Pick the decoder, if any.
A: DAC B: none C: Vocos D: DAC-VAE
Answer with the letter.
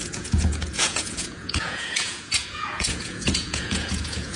C